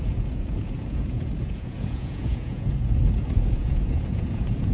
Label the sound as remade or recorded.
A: remade